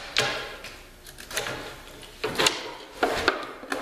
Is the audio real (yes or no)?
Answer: yes